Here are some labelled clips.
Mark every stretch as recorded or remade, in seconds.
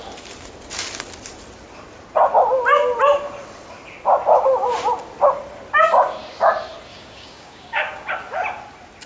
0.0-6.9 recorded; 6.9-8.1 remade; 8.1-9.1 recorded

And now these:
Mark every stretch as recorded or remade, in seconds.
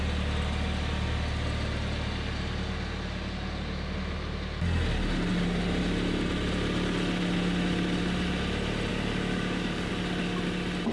0.0-8.9 recorded; 8.9-9.9 remade; 9.9-10.9 recorded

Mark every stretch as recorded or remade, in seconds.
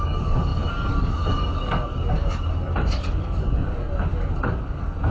0.0-5.1 remade